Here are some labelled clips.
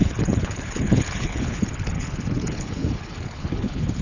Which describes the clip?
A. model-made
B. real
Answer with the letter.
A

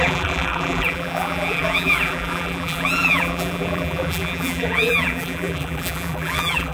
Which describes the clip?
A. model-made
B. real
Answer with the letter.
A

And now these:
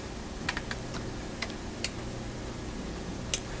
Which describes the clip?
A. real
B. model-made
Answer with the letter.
A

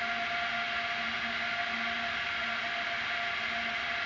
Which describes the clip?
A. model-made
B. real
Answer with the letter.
B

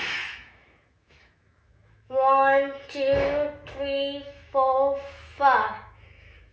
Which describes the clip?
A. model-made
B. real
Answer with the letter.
A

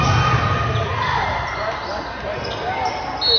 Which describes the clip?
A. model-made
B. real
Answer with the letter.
B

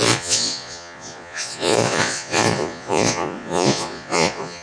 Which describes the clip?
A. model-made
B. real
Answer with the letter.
A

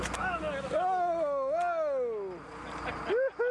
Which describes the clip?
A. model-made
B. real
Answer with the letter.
B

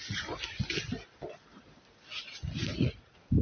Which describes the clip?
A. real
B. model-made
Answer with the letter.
A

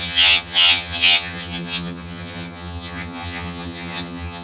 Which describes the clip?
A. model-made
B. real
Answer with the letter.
A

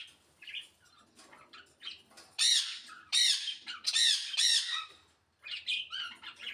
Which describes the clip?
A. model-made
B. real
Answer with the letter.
A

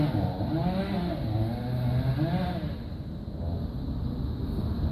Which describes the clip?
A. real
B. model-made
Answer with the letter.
A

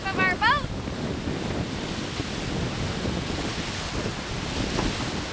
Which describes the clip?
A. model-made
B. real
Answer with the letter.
B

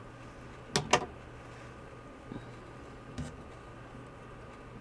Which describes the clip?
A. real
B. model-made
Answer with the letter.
A